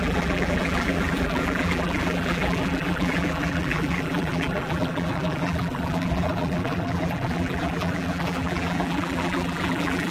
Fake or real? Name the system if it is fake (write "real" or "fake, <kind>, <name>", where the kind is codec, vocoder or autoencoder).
fake, vocoder, BigVGAN v2